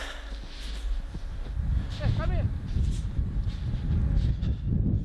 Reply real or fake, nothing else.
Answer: real